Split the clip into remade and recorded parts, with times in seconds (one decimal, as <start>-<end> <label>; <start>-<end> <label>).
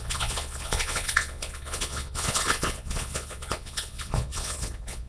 0.0-5.1 remade